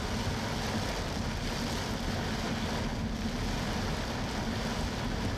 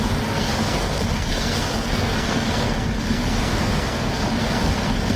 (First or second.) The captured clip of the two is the first